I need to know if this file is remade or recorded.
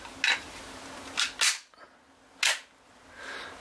recorded